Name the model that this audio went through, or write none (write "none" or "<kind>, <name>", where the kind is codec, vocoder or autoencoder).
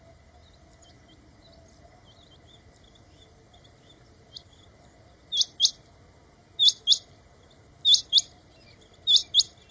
none